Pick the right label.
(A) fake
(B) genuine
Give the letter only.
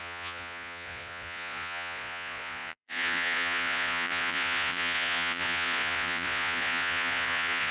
A